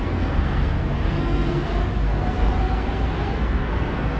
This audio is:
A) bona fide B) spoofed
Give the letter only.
B